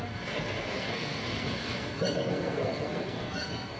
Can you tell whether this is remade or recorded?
remade